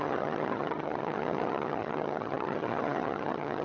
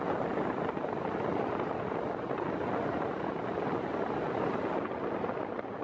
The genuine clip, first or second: second